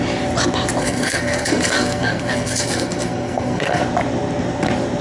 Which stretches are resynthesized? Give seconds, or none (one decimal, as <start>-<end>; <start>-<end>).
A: 0.8-3.8